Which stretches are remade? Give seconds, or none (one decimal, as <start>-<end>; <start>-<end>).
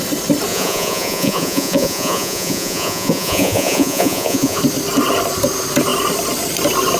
0.5-4.6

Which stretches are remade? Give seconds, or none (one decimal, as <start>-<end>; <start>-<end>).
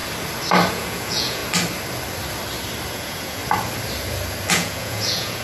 0.7-1.4; 2.9-3.4; 4.5-5.4